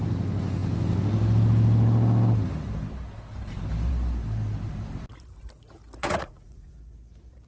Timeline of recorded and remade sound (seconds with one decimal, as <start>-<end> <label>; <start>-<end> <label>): 0.0-6.0 recorded; 6.0-6.7 remade; 6.7-7.5 recorded